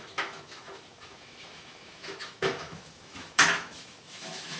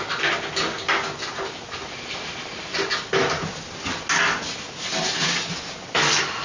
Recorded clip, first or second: second